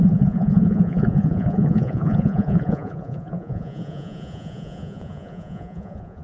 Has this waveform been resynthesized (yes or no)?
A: yes